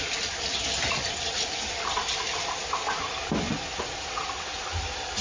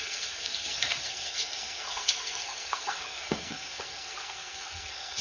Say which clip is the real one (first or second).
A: first